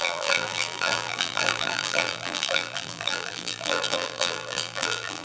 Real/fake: fake